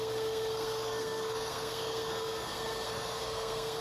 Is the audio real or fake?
fake